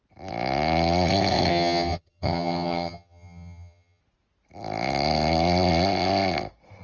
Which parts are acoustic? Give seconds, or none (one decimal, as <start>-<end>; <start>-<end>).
0.0-1.5; 4.0-6.8